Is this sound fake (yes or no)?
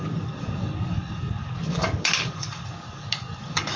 yes